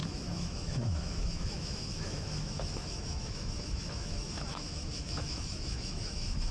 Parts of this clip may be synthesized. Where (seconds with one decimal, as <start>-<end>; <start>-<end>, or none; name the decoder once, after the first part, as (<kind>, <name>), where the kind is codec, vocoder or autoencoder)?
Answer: 0.0-6.5 (autoencoder, DAC-VAE)

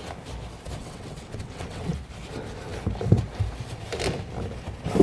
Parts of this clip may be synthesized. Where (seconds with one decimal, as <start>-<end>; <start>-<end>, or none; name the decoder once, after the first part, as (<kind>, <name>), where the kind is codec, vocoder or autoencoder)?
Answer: 0.8-1.9 (vocoder, WaveNeXt)